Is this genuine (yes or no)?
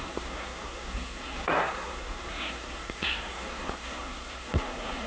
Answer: no